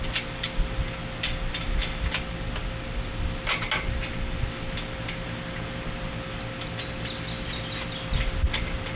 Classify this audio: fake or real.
real